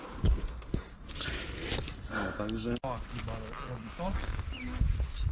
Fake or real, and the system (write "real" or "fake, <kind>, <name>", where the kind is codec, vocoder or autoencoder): real